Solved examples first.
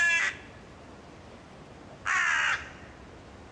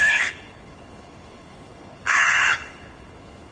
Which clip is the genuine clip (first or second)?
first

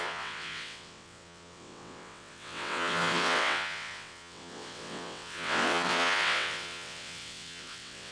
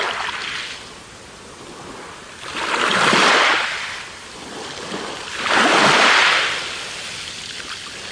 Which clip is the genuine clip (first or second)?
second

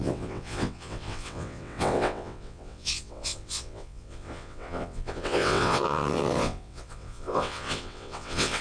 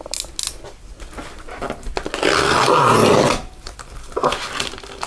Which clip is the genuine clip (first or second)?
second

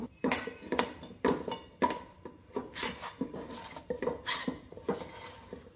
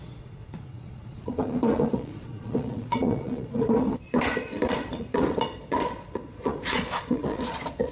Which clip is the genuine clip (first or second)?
first